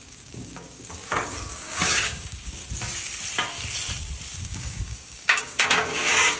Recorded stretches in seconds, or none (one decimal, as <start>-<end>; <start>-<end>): 2.6-4.4